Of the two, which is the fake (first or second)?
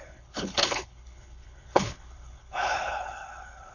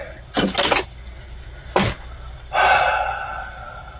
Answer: first